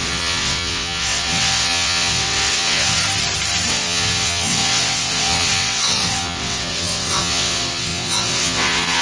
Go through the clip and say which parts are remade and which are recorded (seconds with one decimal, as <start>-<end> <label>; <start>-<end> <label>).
0.0-3.0 remade; 3.0-3.7 recorded; 3.7-9.0 remade